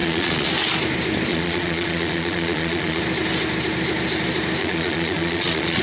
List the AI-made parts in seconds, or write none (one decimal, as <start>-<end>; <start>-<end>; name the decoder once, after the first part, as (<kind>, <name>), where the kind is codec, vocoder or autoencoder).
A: 0.0-0.5 (vocoder, Vocos); 1.3-3.0; 4.6-5.8